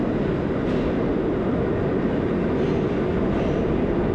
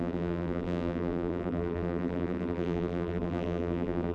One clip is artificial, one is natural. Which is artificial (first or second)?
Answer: second